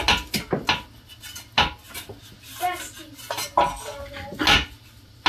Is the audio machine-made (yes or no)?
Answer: no